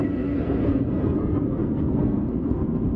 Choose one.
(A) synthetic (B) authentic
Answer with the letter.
A